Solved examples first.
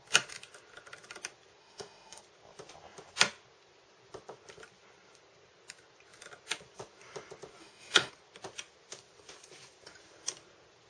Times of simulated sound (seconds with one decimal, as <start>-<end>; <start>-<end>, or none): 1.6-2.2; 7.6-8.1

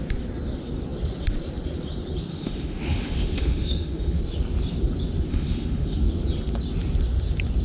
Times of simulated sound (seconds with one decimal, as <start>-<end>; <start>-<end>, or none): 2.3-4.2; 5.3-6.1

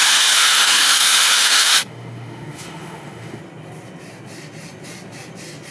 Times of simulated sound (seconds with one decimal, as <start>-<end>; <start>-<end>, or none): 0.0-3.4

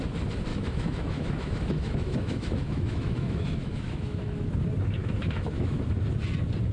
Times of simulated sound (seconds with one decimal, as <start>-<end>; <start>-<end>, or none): 0.5-4.5; 5.0-5.8

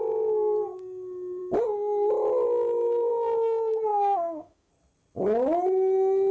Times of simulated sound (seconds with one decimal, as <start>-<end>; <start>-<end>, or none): 3.9-4.7

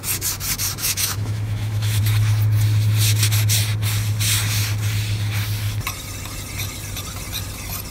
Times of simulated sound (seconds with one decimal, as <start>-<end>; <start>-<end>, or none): 0.8-2.0

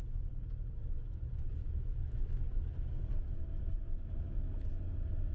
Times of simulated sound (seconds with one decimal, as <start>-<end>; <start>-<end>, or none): 0.8-2.9; 3.4-4.5